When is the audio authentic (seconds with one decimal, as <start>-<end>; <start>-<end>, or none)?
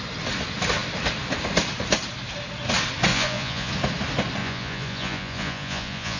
0.0-3.1; 3.7-4.4